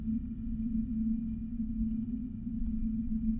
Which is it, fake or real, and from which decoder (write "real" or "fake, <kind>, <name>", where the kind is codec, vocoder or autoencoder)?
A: real